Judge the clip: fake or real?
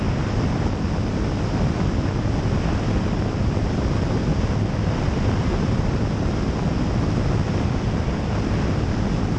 real